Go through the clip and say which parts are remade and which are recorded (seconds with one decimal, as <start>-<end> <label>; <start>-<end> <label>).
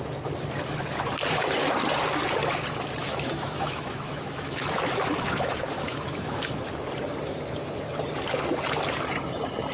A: 0.0-3.0 recorded; 3.0-6.6 remade; 6.6-9.7 recorded